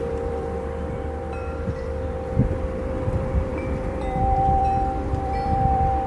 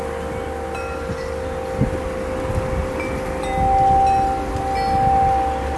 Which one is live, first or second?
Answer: second